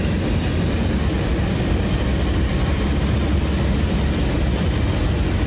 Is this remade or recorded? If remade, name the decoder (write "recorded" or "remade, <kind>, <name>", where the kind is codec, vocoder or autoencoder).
recorded